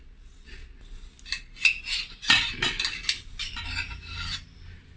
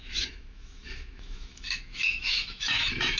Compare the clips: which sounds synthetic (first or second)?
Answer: second